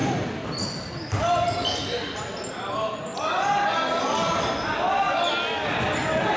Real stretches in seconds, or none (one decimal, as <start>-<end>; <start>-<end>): 0.0-6.4